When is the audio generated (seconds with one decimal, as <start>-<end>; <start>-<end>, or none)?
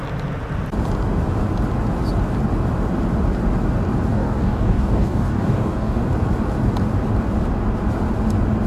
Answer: 4.1-6.1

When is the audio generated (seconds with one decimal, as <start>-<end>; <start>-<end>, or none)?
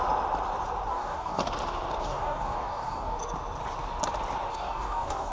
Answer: 0.9-1.4; 2.0-3.2; 4.5-5.3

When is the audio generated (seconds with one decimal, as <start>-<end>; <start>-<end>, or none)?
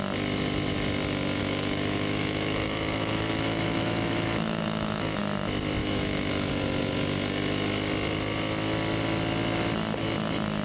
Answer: 1.4-5.2; 5.8-6.5